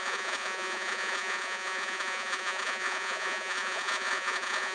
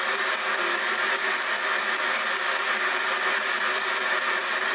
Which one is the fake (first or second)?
first